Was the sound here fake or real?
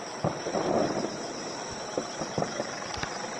fake